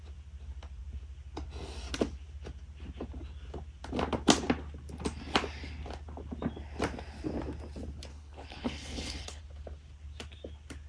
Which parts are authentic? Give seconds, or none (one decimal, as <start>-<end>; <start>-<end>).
0.0-8.1; 9.4-10.9